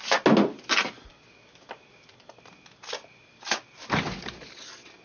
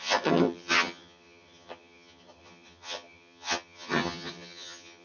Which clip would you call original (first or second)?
first